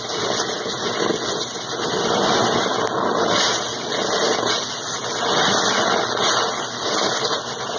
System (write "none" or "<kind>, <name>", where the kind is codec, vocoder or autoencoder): none